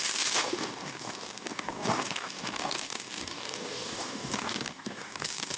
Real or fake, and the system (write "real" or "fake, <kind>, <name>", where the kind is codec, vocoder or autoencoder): fake, codec, DAC